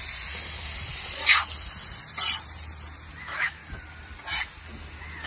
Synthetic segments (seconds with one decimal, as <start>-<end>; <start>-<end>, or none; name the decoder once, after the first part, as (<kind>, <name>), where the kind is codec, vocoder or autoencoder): 3.2-3.6 (autoencoder, DAC-VAE)